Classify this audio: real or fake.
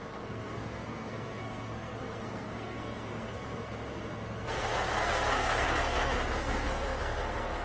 fake